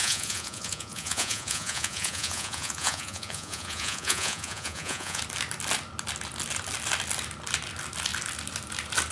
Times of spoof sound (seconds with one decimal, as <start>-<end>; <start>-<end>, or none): 0.0-5.2